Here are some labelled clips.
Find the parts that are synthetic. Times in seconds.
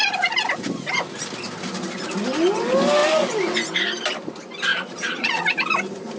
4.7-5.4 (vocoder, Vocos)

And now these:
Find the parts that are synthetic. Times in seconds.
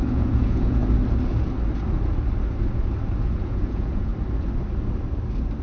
0.0-0.8 (vocoder, Vocos); 3.2-4.1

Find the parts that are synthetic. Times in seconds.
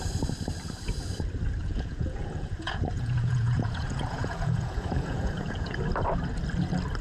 1.6-5.8 (vocoder, Vocos)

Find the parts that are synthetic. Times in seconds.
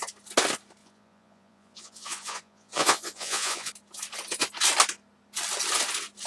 0.8-3.7 (vocoder, Vocos)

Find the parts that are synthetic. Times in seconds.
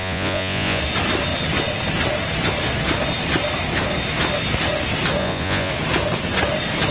0.0-0.8 (vocoder, Vocos); 5.2-5.7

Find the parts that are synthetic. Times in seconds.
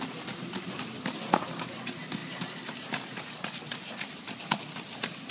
none